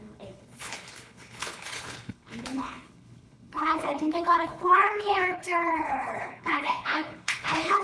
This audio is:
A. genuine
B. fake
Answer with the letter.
B